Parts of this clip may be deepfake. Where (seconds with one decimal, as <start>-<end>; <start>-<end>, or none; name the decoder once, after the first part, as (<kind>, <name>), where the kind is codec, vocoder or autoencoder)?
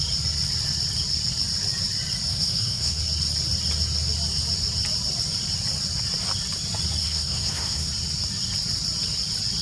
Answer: 2.3-3.0 (codec, SNAC); 7.0-7.9